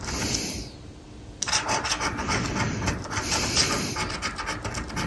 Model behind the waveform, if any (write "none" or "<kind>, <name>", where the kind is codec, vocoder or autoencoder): none